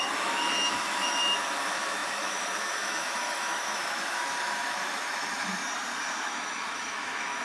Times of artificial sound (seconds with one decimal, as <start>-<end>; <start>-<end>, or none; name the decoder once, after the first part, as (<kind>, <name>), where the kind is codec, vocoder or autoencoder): 0.0-5.6 (autoencoder, DAC-VAE); 6.1-7.4

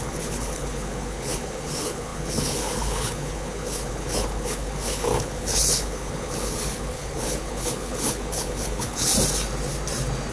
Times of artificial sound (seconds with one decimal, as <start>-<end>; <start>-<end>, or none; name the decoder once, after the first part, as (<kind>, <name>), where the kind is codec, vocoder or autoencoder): 0.0-9.1 (codec, HILCodec)

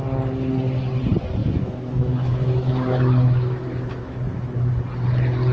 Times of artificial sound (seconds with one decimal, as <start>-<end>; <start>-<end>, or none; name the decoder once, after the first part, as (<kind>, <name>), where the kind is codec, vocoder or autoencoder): 1.4-4.7 (autoencoder, DAC-VAE)

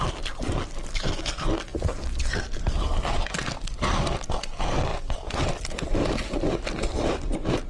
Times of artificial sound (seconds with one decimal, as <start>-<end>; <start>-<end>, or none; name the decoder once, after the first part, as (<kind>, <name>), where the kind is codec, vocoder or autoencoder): 4.9-5.6 (vocoder, BigVGAN v2)